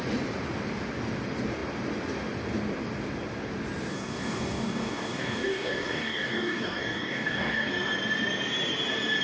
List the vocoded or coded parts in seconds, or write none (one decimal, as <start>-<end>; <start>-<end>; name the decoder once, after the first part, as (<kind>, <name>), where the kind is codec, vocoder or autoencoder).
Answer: 3.9-7.7 (codec, DAC)